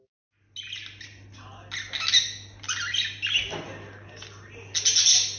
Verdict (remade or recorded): recorded